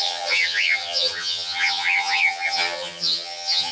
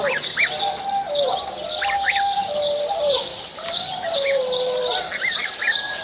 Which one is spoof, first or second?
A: first